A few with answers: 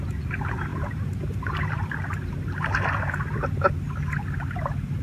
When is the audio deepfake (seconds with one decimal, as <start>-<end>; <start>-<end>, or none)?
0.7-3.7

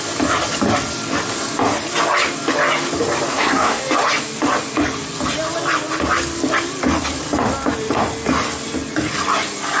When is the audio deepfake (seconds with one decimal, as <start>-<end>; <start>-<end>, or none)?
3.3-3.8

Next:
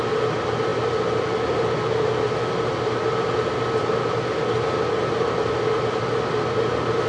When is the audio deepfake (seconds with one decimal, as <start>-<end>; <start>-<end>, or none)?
none

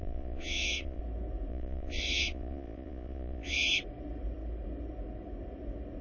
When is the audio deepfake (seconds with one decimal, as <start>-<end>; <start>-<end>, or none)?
0.0-1.0; 1.5-3.7